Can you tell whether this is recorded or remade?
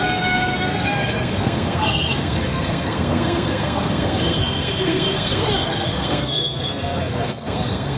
remade